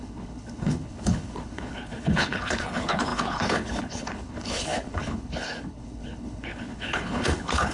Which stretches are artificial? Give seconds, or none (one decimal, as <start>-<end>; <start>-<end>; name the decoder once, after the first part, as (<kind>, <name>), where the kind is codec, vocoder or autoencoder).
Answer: 0.0-7.7 (codec, HILCodec)